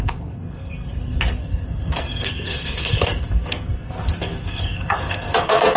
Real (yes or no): no